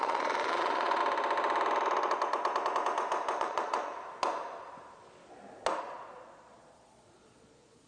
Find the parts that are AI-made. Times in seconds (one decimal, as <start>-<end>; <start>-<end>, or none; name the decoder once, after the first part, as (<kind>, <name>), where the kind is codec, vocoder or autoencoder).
0.0-1.0 (vocoder, Vocos); 3.4-3.9; 5.8-7.9

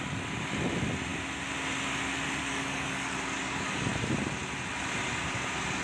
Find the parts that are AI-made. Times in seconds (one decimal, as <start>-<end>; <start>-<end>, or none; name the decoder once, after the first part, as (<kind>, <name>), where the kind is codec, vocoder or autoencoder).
2.5-3.9 (codec, DAC)

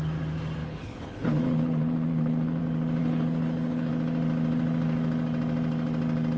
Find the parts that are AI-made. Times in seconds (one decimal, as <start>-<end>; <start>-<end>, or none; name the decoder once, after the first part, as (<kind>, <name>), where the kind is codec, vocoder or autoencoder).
0.6-2.6 (codec, HILCodec); 3.0-3.9

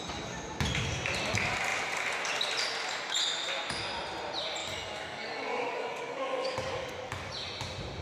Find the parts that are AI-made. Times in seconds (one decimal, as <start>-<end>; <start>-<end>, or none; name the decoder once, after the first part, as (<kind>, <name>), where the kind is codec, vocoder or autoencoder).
4.6-7.3 (codec, DAC)

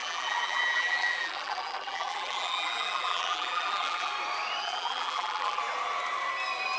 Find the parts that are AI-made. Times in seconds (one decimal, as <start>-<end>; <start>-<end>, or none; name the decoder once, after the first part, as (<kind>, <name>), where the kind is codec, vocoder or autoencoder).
0.0-4.1 (vocoder, BigVGAN v2); 4.6-5.6

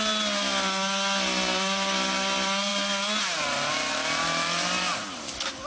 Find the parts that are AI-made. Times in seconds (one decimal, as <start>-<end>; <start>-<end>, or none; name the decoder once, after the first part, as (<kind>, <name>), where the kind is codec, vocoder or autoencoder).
none